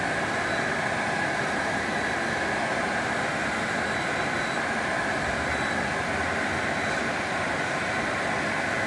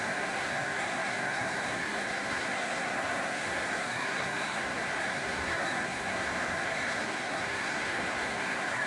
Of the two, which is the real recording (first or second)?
first